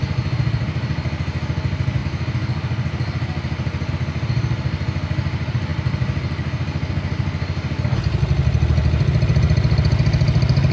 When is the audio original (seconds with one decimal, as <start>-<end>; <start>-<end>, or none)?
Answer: 0.0-10.7